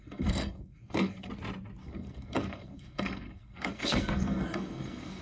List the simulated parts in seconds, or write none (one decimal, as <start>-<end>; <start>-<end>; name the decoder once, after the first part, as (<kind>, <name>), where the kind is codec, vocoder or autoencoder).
0.0-1.3 (codec, SNAC); 1.8-5.2